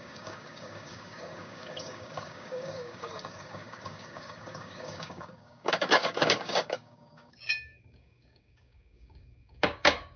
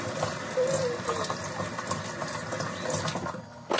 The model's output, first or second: first